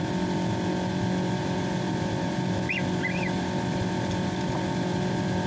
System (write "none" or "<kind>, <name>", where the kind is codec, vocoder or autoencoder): none